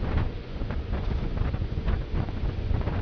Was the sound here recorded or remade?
remade